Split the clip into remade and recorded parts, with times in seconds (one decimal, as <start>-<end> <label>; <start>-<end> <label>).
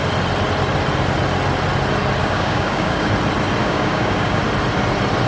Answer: 0.0-2.2 recorded; 2.2-3.1 remade; 3.1-3.6 recorded; 3.6-4.4 remade; 4.4-5.3 recorded